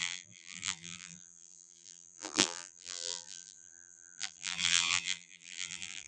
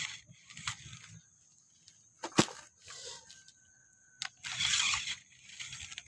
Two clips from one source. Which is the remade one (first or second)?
first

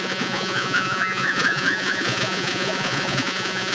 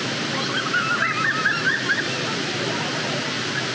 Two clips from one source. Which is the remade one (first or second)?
first